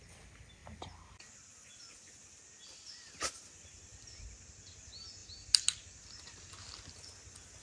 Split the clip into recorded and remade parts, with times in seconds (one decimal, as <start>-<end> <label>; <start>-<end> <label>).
0.0-7.6 recorded